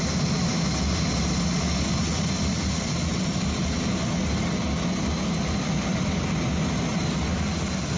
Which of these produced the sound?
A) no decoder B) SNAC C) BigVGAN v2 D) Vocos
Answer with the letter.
A